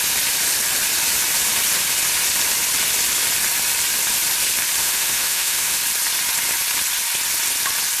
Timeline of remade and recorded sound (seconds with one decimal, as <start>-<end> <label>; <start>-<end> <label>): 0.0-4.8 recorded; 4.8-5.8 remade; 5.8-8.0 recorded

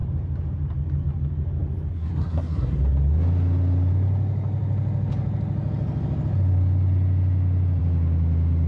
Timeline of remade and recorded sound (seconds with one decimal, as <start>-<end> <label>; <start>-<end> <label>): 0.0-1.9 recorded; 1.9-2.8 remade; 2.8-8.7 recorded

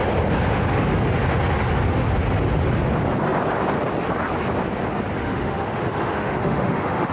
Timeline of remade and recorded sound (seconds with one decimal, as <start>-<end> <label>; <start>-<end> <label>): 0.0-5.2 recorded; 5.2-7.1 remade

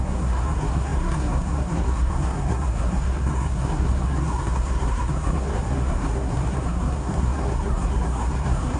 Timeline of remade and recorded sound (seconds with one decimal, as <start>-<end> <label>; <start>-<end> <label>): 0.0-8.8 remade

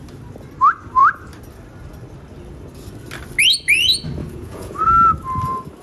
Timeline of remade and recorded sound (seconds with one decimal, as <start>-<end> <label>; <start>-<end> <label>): 0.0-4.2 recorded; 4.2-4.8 remade; 4.8-5.8 recorded

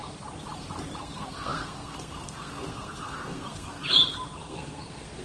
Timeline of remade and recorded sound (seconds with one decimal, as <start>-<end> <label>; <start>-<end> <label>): 0.0-1.0 recorded; 1.0-3.8 remade; 3.8-4.4 recorded; 4.4-5.2 remade

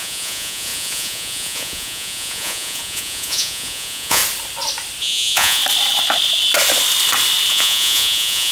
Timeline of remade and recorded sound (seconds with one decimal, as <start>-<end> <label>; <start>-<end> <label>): 0.0-4.2 remade; 4.2-5.0 recorded; 5.0-5.6 remade; 5.6-7.5 recorded; 7.5-8.5 remade

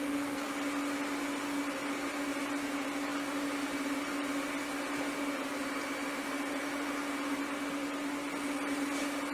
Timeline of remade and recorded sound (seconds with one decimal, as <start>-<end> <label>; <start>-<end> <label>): 0.0-0.5 remade; 0.5-9.3 recorded